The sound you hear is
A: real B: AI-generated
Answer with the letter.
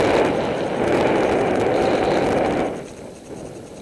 A